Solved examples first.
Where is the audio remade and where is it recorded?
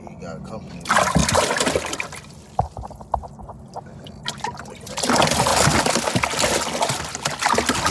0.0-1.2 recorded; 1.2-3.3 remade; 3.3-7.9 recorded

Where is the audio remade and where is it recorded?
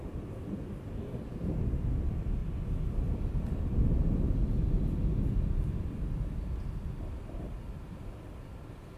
0.0-2.4 remade; 2.4-2.9 recorded; 2.9-4.4 remade; 4.4-5.1 recorded; 5.1-9.0 remade